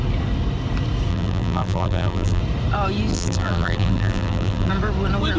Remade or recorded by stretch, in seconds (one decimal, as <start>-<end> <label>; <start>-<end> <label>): 0.0-1.1 recorded; 1.1-2.4 remade; 2.4-3.1 recorded; 3.1-4.7 remade; 4.7-5.4 recorded